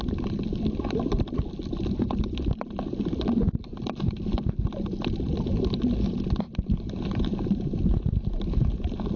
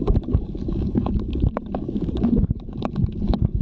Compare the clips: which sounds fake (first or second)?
second